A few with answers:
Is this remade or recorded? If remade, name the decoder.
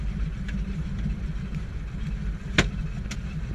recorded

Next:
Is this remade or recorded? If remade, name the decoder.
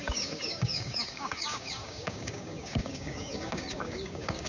remade, codec, DAC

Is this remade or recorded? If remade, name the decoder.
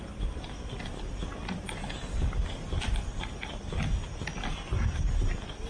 recorded